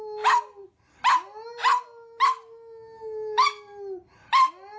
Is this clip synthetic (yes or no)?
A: no